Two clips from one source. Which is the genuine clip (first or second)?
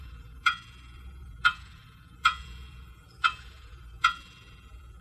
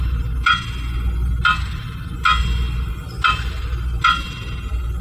second